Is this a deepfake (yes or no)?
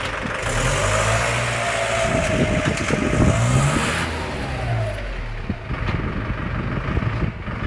no